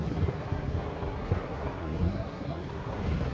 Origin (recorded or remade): remade